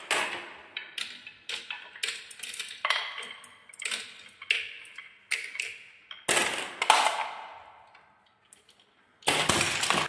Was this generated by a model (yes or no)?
no